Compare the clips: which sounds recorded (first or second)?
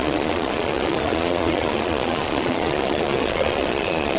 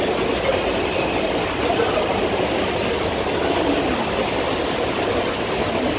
second